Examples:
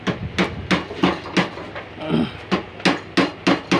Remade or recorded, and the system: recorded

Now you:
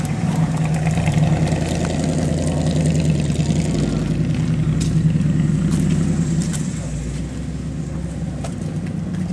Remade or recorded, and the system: recorded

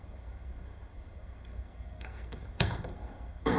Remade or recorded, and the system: remade, codec, SNAC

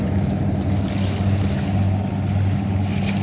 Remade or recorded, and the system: recorded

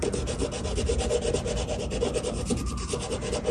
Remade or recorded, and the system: recorded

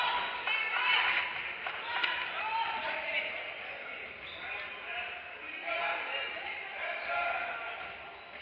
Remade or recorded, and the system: recorded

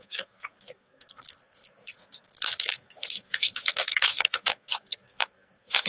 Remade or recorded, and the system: remade, codec, SNAC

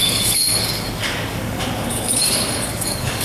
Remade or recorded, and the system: remade, codec, DAC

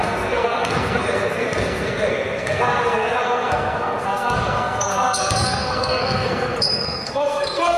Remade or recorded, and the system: remade, codec, SNAC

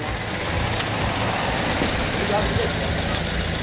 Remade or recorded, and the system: recorded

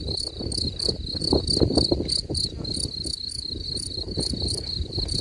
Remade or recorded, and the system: remade, vocoder, BigVGAN v2